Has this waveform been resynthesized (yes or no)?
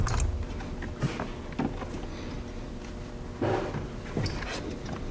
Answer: no